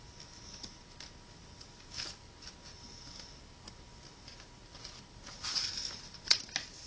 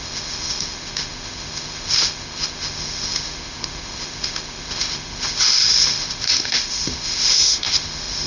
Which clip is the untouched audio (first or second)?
first